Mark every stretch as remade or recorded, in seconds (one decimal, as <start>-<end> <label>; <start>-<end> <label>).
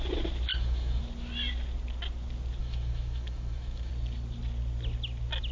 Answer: 0.0-0.5 recorded; 0.5-1.0 remade; 1.0-2.6 recorded; 2.6-3.9 remade; 3.9-5.5 recorded